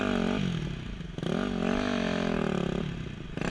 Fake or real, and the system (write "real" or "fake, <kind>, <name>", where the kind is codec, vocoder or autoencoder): real